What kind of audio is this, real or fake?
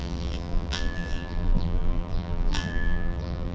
fake